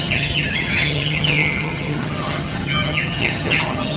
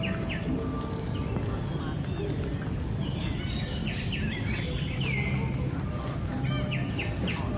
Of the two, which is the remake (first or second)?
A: first